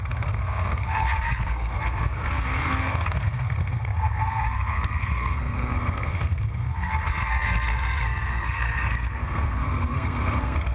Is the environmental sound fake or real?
fake